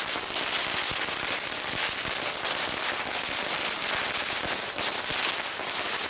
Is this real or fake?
real